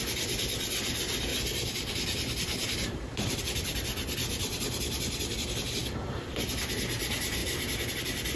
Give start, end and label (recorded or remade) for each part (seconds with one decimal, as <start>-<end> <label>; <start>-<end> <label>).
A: 0.0-1.3 recorded; 1.3-3.4 remade; 3.4-8.4 recorded